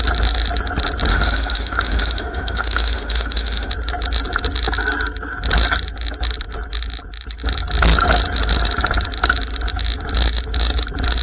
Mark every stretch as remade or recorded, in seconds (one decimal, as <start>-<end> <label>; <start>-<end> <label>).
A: 0.0-1.1 recorded; 1.1-3.7 remade; 3.7-11.2 recorded

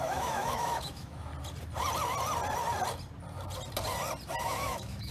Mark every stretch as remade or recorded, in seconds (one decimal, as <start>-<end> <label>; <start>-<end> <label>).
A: 0.0-1.3 remade; 1.3-4.4 recorded; 4.4-5.1 remade